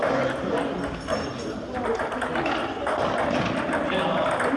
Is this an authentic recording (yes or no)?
yes